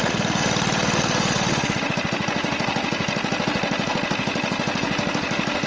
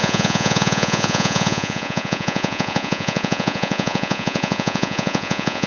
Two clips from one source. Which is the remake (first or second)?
second